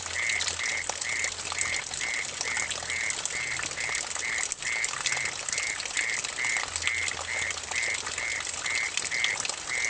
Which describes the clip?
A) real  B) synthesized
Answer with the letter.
A